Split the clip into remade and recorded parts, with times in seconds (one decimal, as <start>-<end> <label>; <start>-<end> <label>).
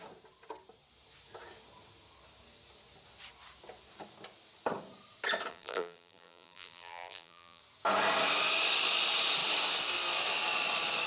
0.0-5.5 recorded; 5.5-7.6 remade; 7.6-11.1 recorded